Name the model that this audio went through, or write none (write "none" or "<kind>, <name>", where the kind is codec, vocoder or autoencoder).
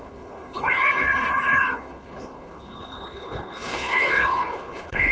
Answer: codec, HILCodec